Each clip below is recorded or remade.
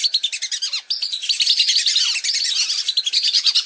recorded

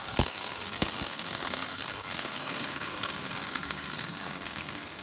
remade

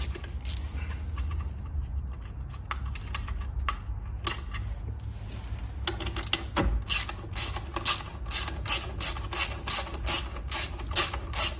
recorded